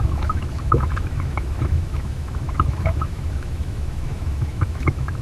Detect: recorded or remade remade